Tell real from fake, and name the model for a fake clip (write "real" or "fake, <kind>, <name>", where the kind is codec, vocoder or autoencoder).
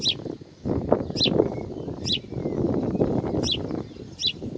real